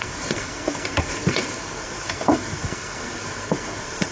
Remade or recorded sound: remade